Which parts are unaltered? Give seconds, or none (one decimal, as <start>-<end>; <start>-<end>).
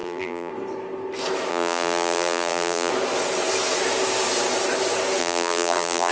0.5-1.5; 2.9-5.2